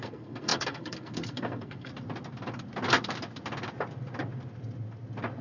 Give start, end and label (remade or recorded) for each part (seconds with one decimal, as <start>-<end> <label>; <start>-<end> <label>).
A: 0.0-1.9 remade; 1.9-5.4 recorded

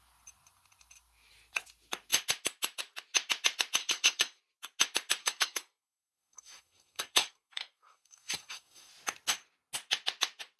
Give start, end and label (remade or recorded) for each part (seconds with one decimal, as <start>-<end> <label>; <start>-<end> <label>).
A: 0.0-3.8 recorded; 3.8-4.4 remade; 4.4-5.2 recorded; 5.2-8.9 remade; 8.9-10.6 recorded